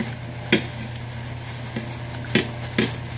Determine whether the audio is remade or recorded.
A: recorded